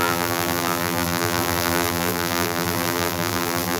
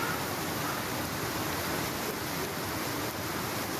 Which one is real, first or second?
second